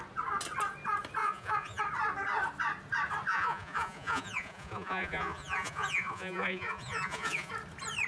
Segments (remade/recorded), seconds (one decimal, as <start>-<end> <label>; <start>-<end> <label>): 0.0-1.2 recorded; 1.2-1.8 remade; 1.8-3.3 recorded; 3.3-7.5 remade; 7.5-8.1 recorded